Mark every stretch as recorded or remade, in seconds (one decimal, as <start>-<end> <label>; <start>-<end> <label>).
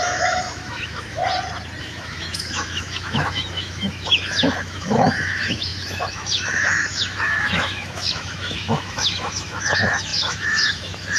0.0-1.2 remade; 1.2-1.8 recorded; 1.8-11.2 remade